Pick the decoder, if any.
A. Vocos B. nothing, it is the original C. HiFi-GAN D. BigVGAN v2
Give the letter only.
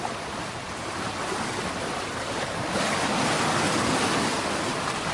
D